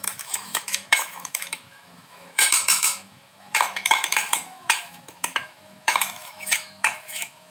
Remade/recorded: remade